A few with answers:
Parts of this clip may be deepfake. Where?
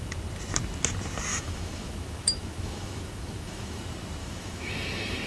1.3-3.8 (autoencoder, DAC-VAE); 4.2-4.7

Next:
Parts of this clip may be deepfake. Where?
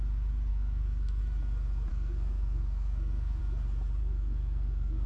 0.5-1.2 (codec, SNAC); 1.9-3.4; 4.0-5.1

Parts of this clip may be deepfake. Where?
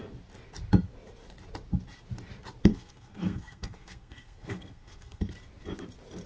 2.7-5.2 (codec, SNAC)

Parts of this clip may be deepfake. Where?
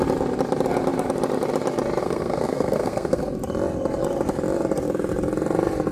2.0-3.2 (codec, SNAC)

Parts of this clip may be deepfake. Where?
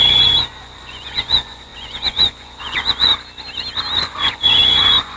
0.0-3.1 (vocoder, Vocos); 4.0-5.2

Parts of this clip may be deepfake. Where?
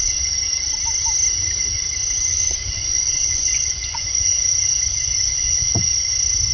2.3-5.8 (vocoder, Vocos)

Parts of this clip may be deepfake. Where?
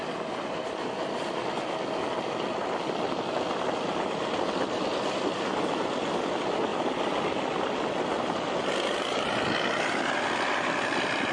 none